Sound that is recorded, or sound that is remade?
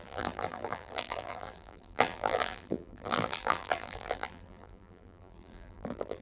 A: remade